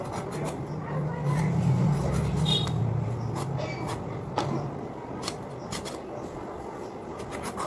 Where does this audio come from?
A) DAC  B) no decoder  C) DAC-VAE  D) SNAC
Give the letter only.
B